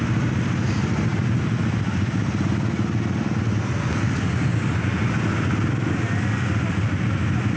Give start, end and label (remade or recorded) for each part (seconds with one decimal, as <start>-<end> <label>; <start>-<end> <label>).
0.0-7.6 recorded